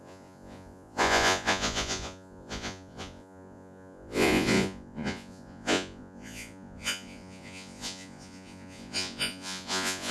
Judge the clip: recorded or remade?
remade